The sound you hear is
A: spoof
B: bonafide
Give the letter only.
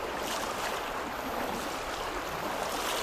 B